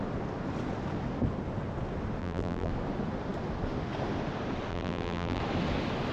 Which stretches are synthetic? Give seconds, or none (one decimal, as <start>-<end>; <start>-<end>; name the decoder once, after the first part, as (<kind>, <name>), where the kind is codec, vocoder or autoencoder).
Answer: 2.2-2.7 (vocoder, BigVGAN v2); 4.7-5.4